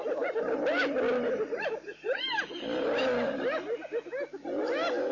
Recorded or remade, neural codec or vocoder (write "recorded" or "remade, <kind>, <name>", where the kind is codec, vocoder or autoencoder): recorded